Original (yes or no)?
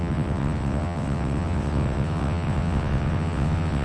no